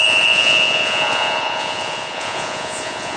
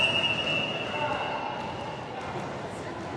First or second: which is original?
second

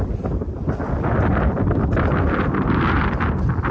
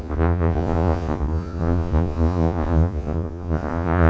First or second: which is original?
first